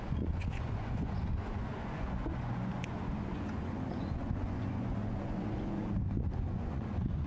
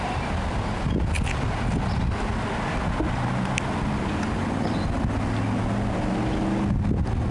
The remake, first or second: first